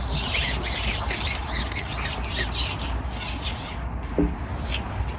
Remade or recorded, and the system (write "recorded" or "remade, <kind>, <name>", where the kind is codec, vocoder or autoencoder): recorded